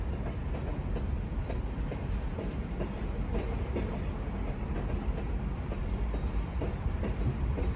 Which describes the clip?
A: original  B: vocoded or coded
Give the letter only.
A